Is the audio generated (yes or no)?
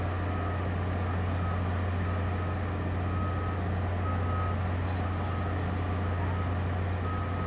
no